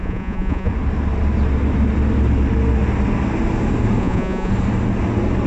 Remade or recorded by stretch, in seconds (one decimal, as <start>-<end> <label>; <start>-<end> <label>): 0.0-0.7 remade; 0.7-4.0 recorded; 4.0-4.5 remade; 4.5-5.5 recorded